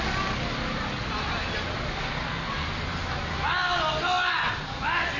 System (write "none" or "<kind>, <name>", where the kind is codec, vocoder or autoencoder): none